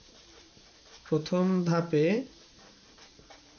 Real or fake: fake